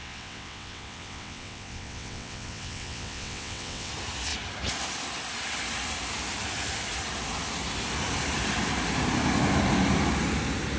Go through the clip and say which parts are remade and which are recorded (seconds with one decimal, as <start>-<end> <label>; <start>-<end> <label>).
0.0-3.9 remade; 3.9-10.8 recorded